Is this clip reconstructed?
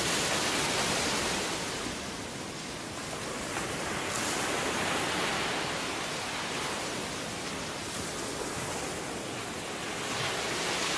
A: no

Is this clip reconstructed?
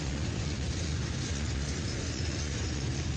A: yes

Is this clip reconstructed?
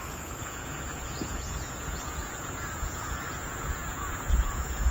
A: yes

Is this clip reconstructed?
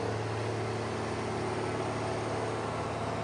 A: no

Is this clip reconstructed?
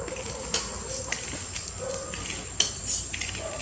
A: no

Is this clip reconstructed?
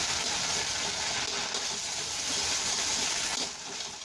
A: no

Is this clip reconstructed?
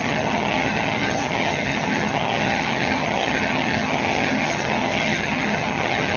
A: yes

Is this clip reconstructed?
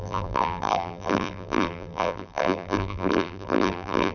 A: yes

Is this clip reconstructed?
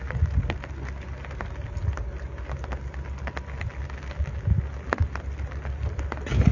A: no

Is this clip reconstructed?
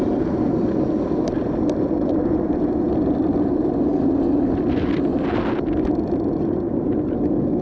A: no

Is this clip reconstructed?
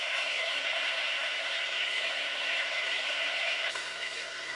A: yes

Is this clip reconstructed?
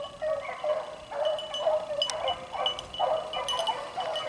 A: no